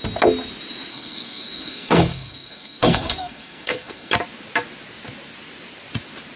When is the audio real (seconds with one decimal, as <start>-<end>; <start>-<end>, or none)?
0.0-0.9; 4.1-6.4